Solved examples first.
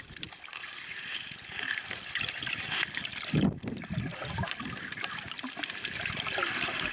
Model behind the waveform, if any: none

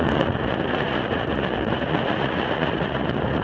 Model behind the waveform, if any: vocoder, Vocos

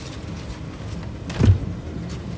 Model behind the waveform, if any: none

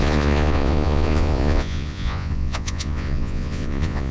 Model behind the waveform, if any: vocoder, Vocos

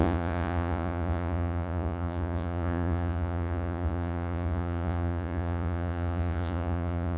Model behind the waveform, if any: vocoder, Vocos